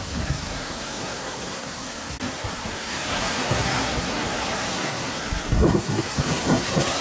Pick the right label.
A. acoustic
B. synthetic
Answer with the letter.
B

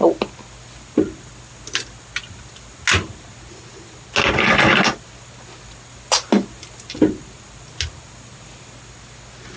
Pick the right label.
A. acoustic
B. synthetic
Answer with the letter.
A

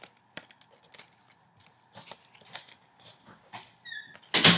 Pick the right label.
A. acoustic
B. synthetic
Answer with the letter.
A